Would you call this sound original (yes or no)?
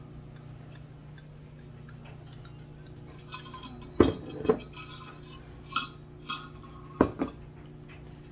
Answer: yes